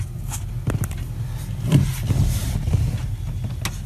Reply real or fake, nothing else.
real